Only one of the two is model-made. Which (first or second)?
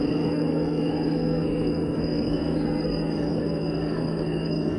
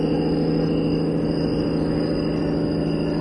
first